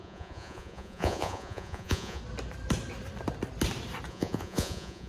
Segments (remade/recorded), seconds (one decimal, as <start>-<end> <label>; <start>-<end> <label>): 0.0-2.2 remade; 2.2-4.1 recorded; 4.1-5.1 remade